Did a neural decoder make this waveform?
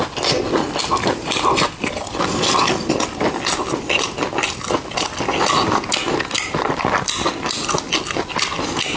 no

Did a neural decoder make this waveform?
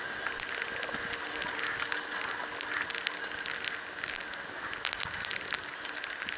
no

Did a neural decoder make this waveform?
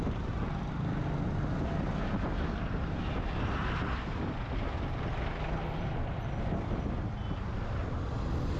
no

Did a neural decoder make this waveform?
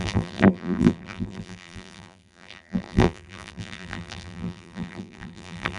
yes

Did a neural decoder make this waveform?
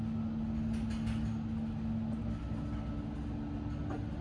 no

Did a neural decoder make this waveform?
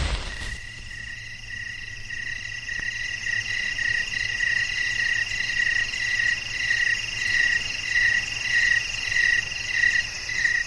no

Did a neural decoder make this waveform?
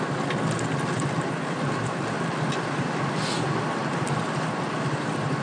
no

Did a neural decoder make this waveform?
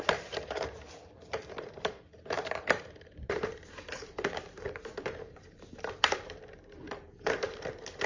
yes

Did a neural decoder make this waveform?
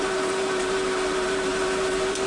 yes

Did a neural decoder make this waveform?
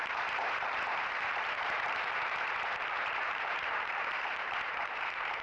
yes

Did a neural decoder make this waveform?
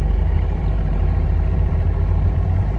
yes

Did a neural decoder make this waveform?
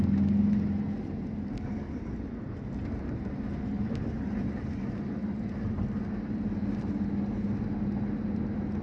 no